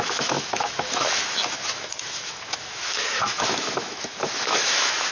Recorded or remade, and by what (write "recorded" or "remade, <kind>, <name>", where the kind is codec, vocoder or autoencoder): remade, autoencoder, DAC-VAE